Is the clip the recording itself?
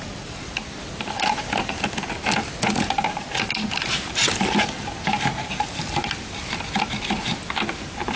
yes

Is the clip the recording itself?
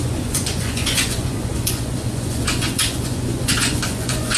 no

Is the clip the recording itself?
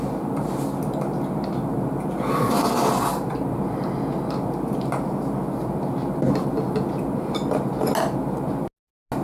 yes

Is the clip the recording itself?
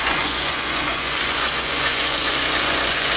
no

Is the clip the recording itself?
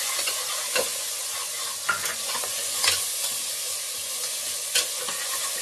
no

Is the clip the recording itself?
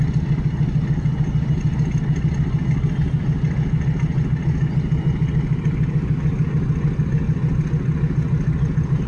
yes